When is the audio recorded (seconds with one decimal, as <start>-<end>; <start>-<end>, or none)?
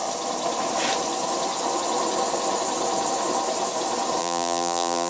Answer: 0.0-4.2